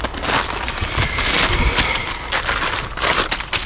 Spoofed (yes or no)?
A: no